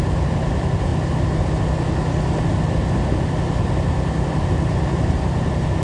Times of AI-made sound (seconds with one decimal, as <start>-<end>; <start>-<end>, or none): 0.0-0.9; 4.4-5.8